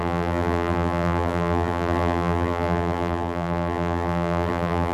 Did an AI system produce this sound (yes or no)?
yes